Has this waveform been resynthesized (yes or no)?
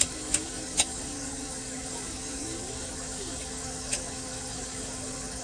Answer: yes